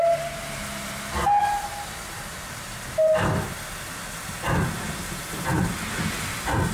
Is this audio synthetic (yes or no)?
no